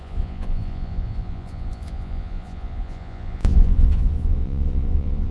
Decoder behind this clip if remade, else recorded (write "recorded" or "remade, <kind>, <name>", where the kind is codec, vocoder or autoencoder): remade, vocoder, Vocos